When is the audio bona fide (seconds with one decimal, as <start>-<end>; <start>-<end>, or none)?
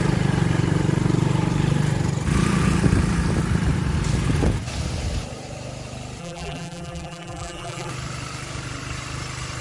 0.0-6.2; 7.9-9.6